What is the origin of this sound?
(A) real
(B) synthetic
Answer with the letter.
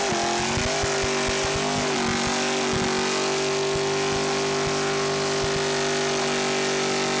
A